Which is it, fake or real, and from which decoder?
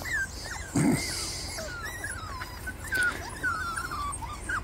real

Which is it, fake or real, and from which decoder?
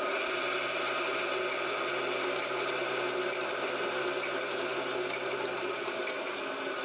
real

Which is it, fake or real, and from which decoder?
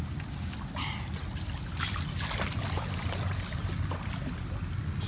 real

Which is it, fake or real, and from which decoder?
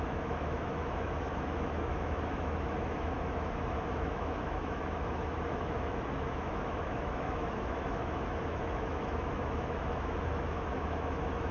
fake, autoencoder, DAC-VAE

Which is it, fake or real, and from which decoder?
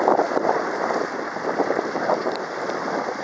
fake, vocoder, BigVGAN v2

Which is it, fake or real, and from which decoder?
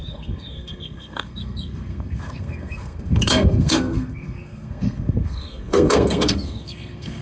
fake, codec, SNAC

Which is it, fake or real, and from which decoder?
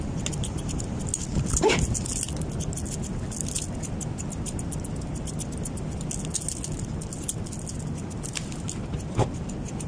real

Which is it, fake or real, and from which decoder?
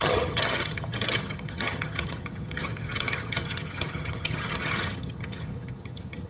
fake, vocoder, HiFi-GAN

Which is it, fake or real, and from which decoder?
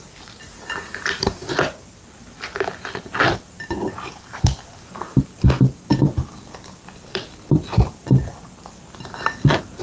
real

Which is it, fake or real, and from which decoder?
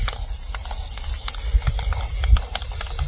real